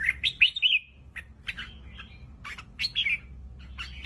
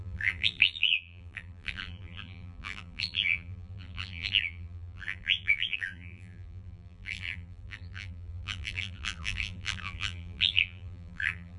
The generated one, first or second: second